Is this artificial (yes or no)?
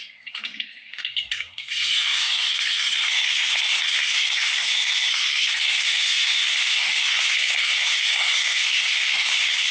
yes